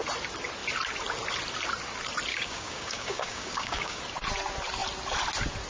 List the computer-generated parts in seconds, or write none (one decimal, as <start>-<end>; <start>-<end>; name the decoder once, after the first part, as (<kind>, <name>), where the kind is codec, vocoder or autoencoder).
2.3-4.0 (codec, DAC)